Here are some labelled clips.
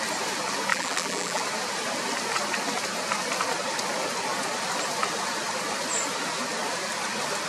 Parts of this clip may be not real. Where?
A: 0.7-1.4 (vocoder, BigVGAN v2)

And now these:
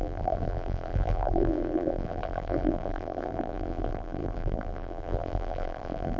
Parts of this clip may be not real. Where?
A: 0.0-6.2 (vocoder, BigVGAN v2)

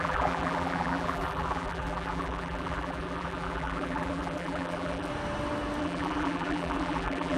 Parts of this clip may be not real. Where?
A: 0.0-5.1 (vocoder, BigVGAN v2); 5.8-7.4

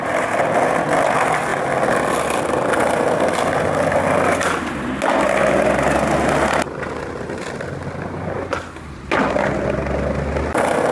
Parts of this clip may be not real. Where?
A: 5.4-7.4 (vocoder, BigVGAN v2)

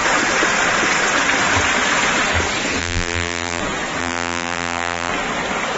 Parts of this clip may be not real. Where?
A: 2.8-3.6 (vocoder, BigVGAN v2); 4.0-5.1